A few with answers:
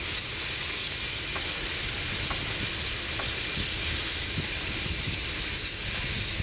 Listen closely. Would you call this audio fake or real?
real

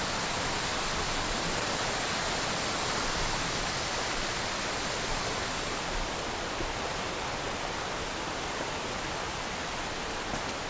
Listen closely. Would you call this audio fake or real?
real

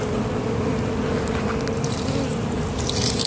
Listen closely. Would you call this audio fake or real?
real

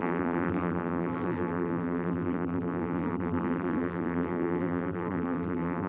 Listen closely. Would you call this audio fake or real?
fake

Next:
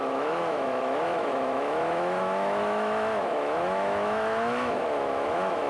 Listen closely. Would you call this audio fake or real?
fake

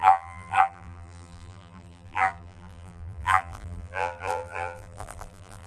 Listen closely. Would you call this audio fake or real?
fake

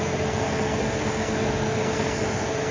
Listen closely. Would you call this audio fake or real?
fake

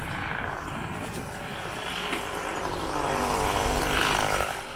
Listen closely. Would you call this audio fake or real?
fake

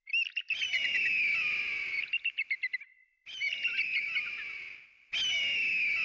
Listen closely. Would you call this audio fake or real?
real